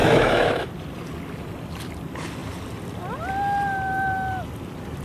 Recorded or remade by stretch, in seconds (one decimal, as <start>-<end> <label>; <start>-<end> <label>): 0.0-0.7 remade; 0.7-5.0 recorded